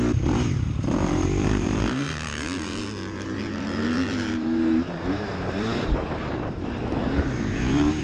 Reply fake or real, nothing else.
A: fake